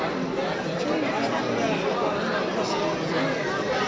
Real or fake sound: real